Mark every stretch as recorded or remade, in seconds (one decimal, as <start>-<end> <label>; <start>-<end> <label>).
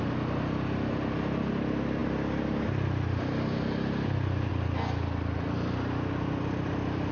0.0-7.1 recorded